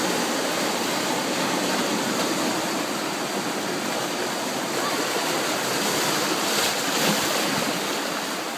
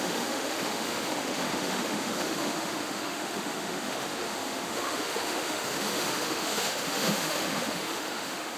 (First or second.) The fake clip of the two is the second